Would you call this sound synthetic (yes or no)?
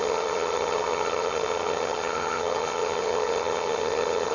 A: yes